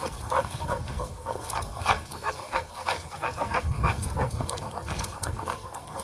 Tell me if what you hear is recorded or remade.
remade